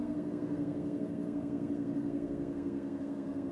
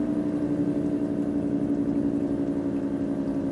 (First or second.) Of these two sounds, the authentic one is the second